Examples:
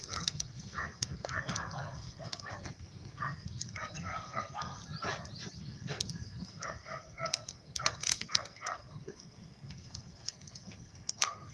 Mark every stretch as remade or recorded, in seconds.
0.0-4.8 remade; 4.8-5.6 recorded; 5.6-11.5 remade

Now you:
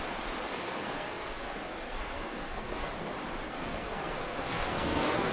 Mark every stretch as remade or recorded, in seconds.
0.0-0.5 recorded; 0.5-2.9 remade; 2.9-3.5 recorded; 3.5-5.3 remade

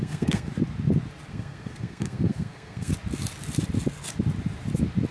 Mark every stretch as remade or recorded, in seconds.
0.0-0.5 remade; 0.5-1.3 recorded; 1.3-2.9 remade; 2.9-5.1 recorded